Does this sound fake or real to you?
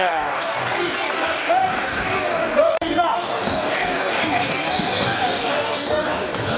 fake